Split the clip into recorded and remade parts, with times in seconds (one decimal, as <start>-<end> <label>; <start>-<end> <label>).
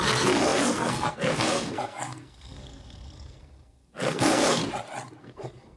0.0-4.6 remade; 4.6-5.2 recorded; 5.2-5.8 remade